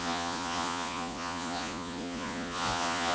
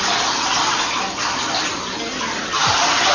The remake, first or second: first